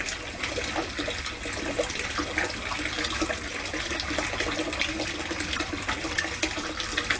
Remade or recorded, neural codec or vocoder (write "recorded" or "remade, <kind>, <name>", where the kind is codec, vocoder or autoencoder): recorded